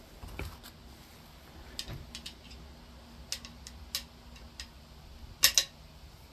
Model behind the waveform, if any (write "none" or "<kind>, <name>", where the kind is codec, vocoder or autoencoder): none